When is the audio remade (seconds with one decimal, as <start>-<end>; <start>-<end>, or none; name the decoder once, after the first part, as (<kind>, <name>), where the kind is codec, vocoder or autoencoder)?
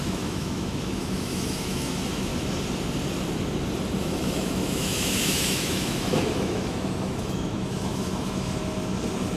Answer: 0.0-2.3 (autoencoder, DAC-VAE); 4.0-8.6